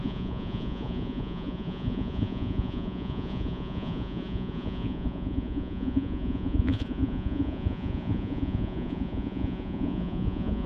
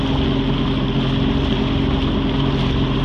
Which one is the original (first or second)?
second